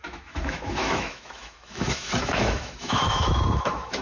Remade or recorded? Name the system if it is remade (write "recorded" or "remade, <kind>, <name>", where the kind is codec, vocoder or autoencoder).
remade, autoencoder, DAC-VAE